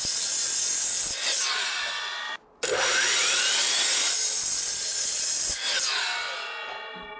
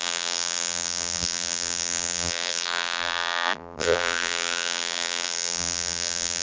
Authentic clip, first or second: first